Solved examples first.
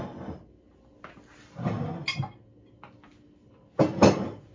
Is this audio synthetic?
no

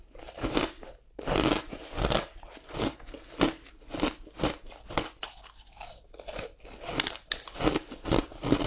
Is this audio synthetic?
no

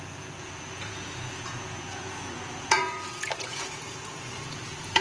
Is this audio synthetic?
yes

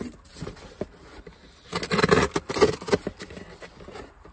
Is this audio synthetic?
no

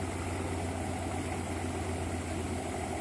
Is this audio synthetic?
no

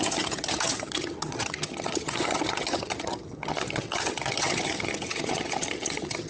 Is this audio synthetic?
yes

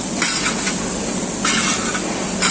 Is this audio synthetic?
no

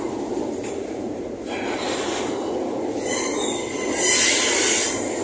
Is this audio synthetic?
no